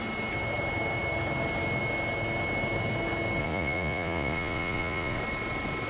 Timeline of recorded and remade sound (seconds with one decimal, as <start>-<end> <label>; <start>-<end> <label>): 0.0-3.4 recorded; 3.4-5.2 remade; 5.2-5.9 recorded